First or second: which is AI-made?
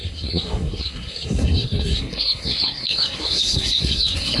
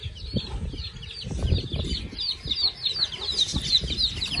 first